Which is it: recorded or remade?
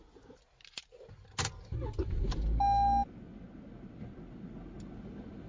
recorded